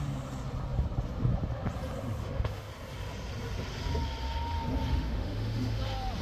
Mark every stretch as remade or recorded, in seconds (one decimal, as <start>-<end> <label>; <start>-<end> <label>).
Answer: 0.0-2.2 recorded; 2.2-2.7 remade; 2.7-4.9 recorded; 4.9-5.8 remade; 5.8-6.2 recorded